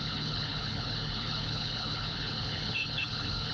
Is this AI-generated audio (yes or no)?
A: yes